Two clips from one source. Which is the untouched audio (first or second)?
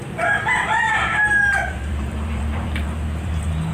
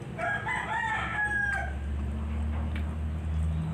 second